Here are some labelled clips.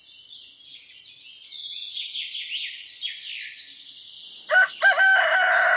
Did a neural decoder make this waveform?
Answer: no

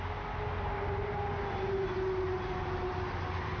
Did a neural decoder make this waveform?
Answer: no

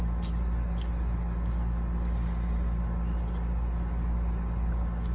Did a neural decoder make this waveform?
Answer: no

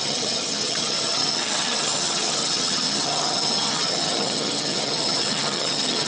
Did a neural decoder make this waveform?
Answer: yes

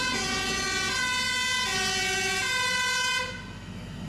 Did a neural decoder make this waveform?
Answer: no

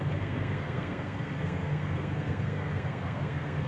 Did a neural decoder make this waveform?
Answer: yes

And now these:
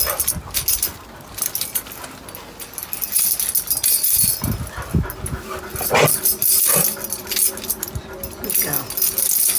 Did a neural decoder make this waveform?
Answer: no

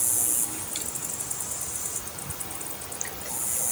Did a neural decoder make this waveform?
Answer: no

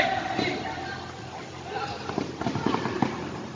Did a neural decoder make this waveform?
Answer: no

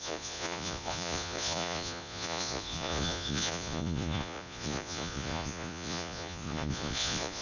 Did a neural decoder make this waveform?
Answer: yes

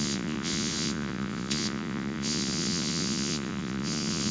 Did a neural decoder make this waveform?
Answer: yes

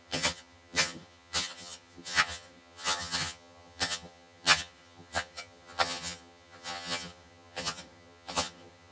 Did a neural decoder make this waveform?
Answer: yes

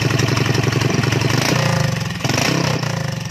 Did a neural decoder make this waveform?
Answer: no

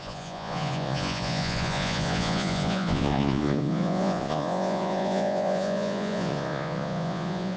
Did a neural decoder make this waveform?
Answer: yes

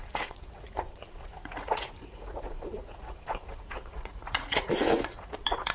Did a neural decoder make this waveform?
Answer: yes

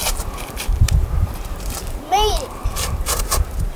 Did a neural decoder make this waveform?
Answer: yes